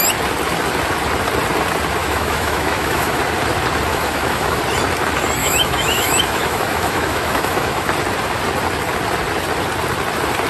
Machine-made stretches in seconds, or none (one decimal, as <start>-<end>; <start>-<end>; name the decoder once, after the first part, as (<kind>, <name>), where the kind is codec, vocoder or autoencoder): 2.0-3.2 (autoencoder, DAC-VAE); 3.9-4.6; 5.4-7.9